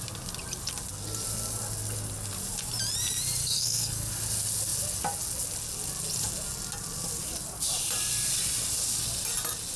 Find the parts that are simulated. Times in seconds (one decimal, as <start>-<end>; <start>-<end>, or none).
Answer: 3.4-4.1